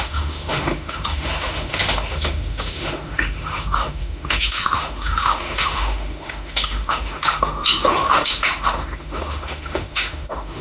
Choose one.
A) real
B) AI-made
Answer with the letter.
B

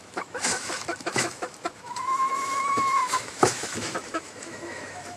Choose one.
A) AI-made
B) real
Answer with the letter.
A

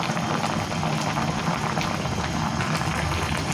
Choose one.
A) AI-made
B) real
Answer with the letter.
B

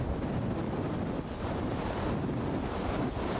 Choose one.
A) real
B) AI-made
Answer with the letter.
A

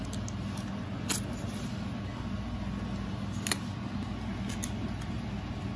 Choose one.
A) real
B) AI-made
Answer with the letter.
A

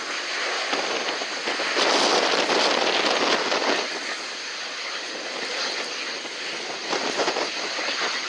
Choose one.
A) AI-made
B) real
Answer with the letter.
B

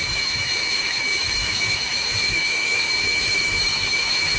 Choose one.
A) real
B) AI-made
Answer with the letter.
B